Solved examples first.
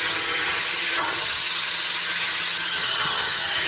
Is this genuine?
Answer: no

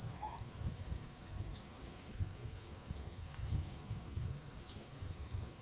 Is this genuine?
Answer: no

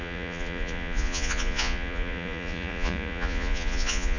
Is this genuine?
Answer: no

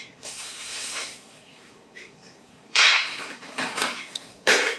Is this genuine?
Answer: no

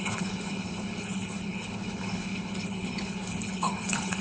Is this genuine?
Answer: no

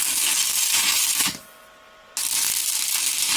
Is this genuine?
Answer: yes